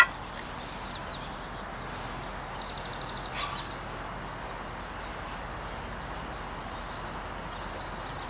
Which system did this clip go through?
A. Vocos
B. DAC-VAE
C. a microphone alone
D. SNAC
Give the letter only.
C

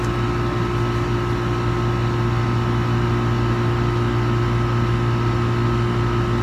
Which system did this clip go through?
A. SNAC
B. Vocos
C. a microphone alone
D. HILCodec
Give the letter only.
C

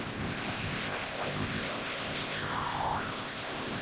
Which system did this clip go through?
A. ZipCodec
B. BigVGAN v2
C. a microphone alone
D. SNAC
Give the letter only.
A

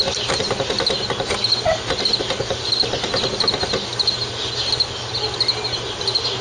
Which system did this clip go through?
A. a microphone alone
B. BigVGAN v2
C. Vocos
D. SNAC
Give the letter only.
A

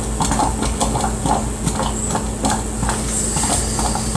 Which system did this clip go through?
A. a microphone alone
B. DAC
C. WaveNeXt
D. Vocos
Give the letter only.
A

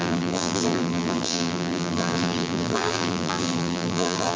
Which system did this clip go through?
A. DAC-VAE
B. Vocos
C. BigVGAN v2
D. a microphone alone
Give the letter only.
C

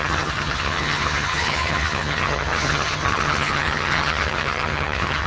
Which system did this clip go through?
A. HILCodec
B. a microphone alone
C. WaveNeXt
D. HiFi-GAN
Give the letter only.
D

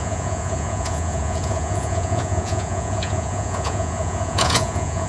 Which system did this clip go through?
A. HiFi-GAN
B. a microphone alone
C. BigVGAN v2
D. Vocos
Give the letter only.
D